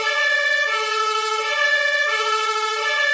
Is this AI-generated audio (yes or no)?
yes